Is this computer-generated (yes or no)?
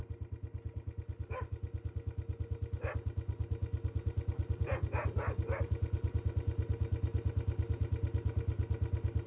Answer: no